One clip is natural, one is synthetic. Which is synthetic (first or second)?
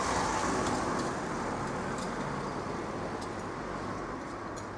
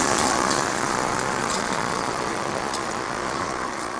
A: second